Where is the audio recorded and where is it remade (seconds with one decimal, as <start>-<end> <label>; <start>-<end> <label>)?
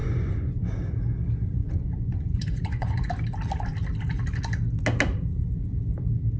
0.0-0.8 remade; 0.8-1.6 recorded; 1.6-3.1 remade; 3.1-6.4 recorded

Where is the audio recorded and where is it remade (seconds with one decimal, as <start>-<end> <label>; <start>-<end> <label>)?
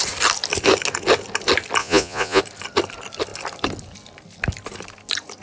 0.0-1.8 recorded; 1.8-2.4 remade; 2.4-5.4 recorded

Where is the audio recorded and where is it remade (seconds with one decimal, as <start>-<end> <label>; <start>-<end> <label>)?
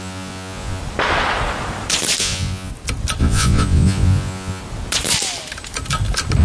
0.0-0.8 remade; 0.8-2.2 recorded; 2.2-2.7 remade; 2.7-3.2 recorded; 3.2-4.6 remade; 4.6-6.4 recorded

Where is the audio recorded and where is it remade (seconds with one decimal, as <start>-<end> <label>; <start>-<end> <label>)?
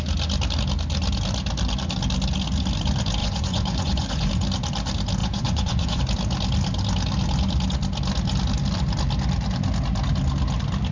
0.0-3.2 recorded; 3.2-4.3 remade; 4.3-5.2 recorded; 5.2-6.0 remade; 6.0-10.9 recorded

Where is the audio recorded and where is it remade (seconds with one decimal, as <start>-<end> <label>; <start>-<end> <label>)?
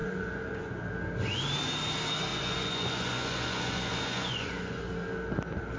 0.0-0.7 remade; 0.7-2.3 recorded; 2.3-4.8 remade; 4.8-5.8 recorded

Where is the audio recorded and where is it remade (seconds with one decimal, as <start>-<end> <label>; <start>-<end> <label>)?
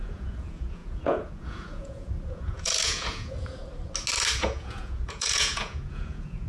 0.0-3.6 remade; 3.6-4.4 recorded; 4.4-6.5 remade